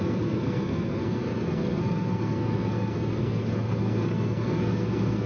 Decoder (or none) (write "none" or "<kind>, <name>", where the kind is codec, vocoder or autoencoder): codec, SNAC